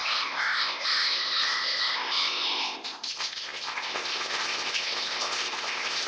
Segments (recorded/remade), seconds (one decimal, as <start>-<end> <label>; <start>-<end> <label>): 0.0-6.1 remade